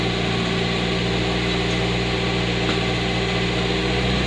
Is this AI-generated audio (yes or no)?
no